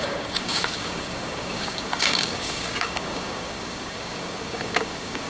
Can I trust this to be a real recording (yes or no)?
no